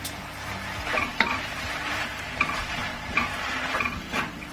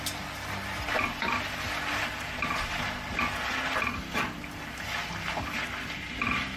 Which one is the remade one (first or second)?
first